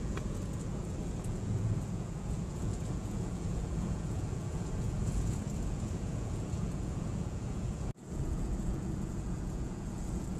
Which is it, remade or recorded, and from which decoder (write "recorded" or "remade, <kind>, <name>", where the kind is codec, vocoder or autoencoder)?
remade, vocoder, Vocos